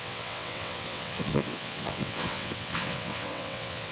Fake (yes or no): yes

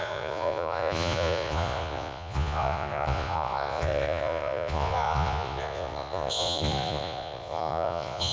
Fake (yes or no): yes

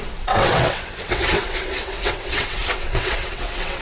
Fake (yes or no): yes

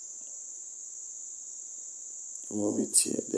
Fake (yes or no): yes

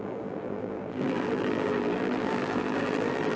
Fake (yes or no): yes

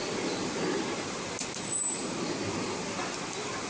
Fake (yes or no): no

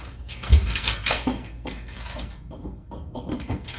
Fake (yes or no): yes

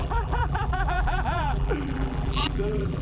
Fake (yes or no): yes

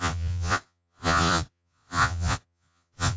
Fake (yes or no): yes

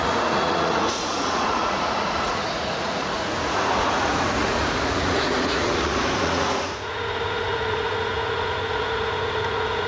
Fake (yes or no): yes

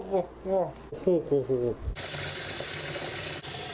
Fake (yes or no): no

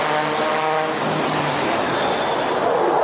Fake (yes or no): no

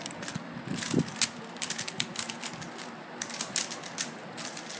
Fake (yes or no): no